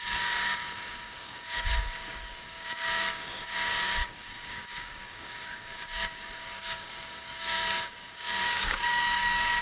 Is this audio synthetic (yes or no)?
yes